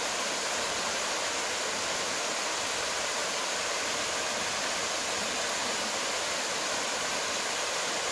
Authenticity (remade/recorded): recorded